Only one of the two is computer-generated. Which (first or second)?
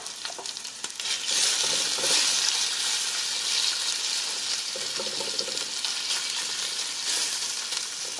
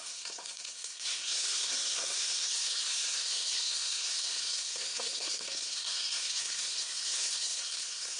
second